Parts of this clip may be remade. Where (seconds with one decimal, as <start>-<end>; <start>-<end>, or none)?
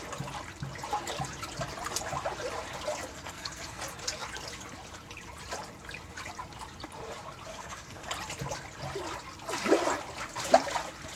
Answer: 3.1-3.8; 7.5-8.1